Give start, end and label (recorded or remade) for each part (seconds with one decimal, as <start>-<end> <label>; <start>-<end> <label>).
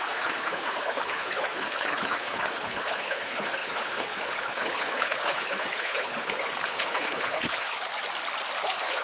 0.0-7.9 remade; 7.9-8.6 recorded; 8.6-9.0 remade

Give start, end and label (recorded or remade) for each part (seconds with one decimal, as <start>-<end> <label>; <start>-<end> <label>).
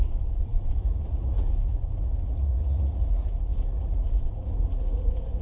0.0-5.4 remade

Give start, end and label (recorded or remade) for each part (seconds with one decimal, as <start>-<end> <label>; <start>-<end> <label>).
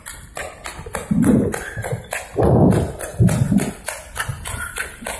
0.0-5.2 recorded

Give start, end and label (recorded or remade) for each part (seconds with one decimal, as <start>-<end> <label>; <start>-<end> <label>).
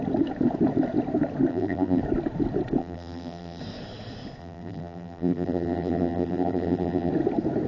0.0-1.5 recorded; 1.5-2.0 remade; 2.0-2.8 recorded; 2.8-3.6 remade; 3.6-4.4 recorded; 4.4-7.1 remade; 7.1-7.7 recorded